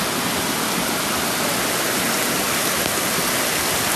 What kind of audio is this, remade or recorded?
recorded